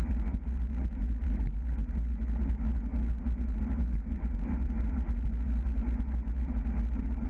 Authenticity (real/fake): real